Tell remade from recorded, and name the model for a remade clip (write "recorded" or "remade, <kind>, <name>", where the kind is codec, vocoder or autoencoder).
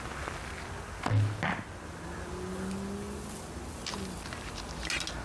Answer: recorded